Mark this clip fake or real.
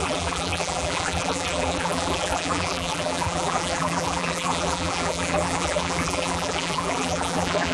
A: fake